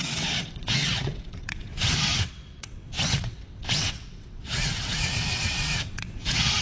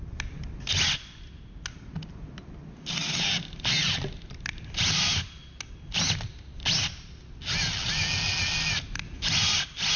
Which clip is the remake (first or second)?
first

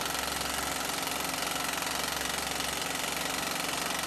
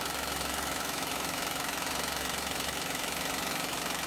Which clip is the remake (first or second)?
second